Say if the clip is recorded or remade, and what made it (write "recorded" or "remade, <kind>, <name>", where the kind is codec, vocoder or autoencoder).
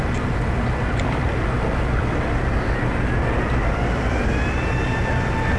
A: recorded